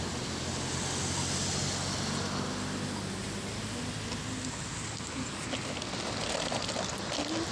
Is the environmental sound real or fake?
real